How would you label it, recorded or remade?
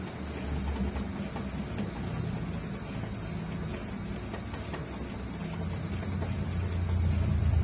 recorded